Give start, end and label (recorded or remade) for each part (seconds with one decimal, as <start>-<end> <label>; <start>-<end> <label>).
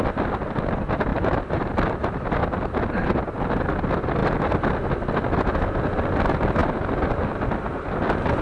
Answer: 0.0-1.1 recorded; 1.1-1.9 remade; 1.9-8.4 recorded